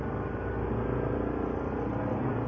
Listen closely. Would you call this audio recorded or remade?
recorded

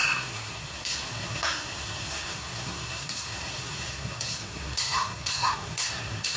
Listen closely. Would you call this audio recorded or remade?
remade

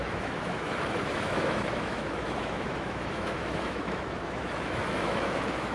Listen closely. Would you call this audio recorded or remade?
remade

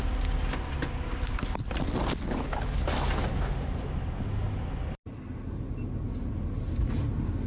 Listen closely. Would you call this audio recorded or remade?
recorded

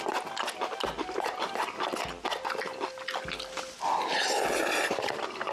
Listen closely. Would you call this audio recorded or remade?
recorded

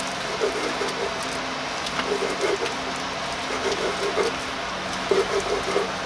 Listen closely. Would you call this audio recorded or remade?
recorded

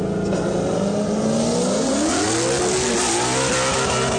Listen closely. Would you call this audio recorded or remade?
recorded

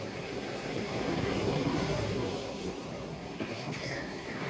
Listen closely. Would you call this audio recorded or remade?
remade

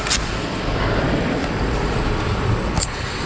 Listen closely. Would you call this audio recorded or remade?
remade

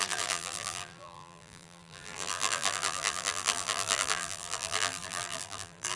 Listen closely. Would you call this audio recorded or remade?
remade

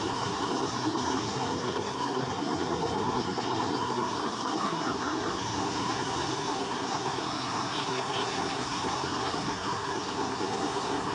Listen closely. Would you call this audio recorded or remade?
remade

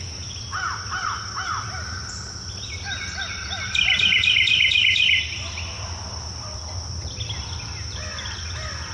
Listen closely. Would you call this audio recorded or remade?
recorded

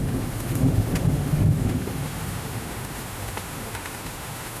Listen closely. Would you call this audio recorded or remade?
remade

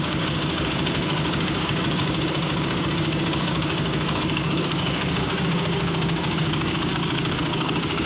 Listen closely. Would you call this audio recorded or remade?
remade